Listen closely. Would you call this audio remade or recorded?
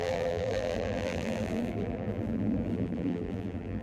remade